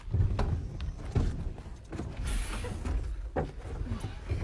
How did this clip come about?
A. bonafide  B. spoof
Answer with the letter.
A